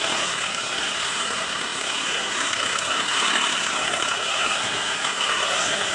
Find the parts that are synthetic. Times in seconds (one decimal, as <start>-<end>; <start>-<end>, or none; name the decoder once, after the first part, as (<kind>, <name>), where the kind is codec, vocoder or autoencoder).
0.0-5.9 (codec, SNAC)